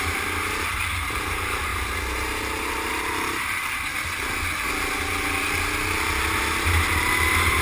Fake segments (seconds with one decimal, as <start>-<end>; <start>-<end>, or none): 0.0-1.7; 2.9-3.9